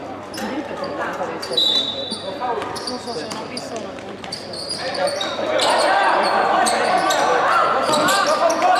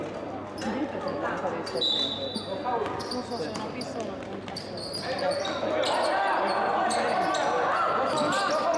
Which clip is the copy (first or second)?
first